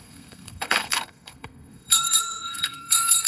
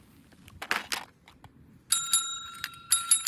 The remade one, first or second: first